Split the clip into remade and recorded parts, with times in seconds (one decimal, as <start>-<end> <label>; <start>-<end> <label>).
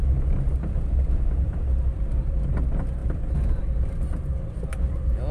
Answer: 0.0-5.3 recorded